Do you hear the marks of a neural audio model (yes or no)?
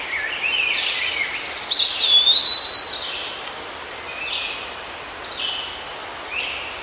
no